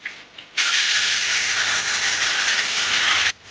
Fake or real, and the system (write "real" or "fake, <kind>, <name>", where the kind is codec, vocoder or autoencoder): real